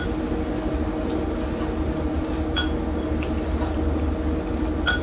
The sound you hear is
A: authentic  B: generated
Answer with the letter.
A